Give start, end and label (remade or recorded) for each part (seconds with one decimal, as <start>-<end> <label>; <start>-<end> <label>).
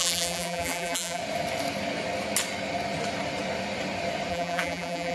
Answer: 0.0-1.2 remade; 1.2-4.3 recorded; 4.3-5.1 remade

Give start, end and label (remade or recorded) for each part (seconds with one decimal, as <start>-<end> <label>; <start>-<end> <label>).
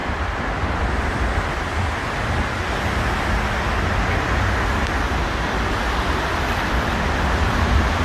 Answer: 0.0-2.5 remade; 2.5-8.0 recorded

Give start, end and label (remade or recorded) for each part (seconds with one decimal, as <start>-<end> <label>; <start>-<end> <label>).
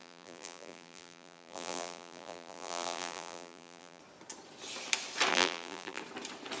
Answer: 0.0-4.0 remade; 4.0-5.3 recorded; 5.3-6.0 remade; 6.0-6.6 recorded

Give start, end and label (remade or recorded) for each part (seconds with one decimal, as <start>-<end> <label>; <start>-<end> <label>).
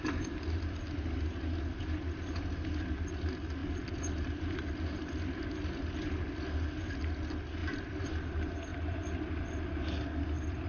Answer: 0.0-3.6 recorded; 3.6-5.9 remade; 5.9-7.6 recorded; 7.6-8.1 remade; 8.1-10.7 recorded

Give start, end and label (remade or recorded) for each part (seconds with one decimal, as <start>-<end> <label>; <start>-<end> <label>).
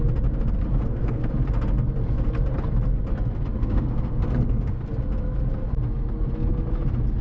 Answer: 0.0-0.7 recorded; 0.7-1.3 remade; 1.3-3.6 recorded; 3.6-4.8 remade; 4.8-7.2 recorded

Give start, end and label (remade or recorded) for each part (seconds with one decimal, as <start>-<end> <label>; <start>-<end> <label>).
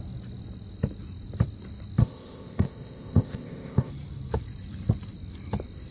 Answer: 0.0-2.0 recorded; 2.0-3.9 remade; 3.9-5.9 recorded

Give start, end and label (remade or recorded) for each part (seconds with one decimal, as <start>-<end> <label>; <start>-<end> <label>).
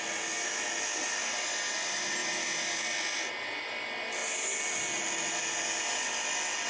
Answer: 0.0-6.7 recorded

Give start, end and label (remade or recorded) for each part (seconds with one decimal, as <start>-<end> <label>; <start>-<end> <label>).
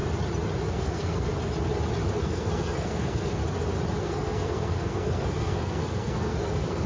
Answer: 0.0-0.7 recorded; 0.7-1.3 remade; 1.3-2.2 recorded; 2.2-3.4 remade; 3.4-4.0 recorded; 4.0-6.9 remade